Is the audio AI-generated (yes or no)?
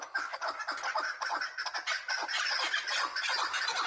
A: no